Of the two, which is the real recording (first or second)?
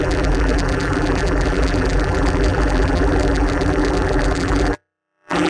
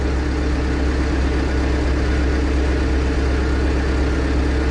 second